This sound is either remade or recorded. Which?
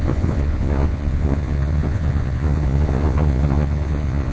remade